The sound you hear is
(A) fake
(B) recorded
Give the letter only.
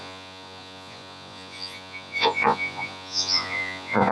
A